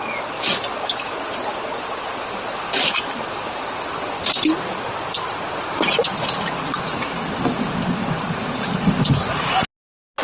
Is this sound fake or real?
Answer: real